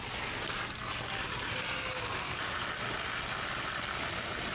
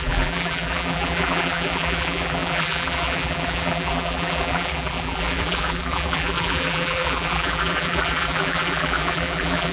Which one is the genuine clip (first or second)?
first